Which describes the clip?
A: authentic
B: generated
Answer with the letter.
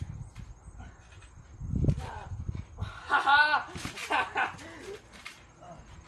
A